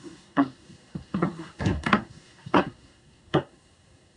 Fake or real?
fake